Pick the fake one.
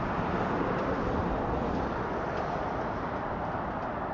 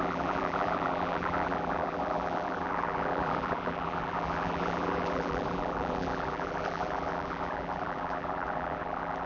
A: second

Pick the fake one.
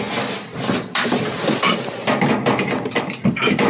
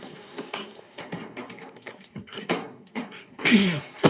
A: second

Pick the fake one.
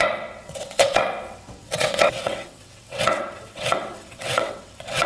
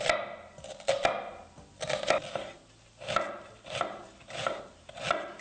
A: first